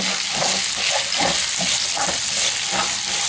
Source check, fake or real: real